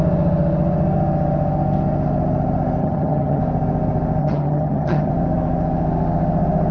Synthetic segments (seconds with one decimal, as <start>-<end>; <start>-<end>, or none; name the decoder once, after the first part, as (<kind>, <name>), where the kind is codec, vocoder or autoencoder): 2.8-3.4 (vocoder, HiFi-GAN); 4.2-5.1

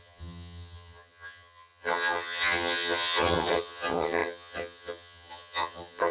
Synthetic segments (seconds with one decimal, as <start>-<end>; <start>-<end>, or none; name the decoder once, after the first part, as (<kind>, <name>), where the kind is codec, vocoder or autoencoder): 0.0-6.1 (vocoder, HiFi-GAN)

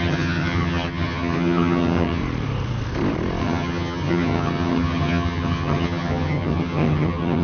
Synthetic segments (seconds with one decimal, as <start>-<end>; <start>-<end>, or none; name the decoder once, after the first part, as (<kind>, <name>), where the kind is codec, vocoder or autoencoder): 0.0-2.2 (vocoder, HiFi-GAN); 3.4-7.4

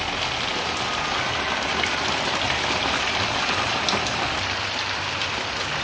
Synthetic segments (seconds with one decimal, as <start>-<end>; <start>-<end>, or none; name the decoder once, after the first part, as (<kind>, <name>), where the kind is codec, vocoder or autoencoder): none